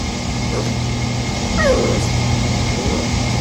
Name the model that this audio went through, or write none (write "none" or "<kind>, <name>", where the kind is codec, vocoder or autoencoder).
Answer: none